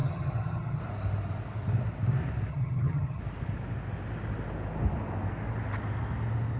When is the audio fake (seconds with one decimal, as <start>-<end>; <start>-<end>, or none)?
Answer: 0.0-0.8; 2.5-3.2